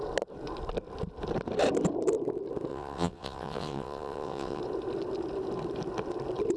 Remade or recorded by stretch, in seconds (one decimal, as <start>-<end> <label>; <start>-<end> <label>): 0.0-2.7 recorded; 2.7-4.6 remade; 4.6-6.6 recorded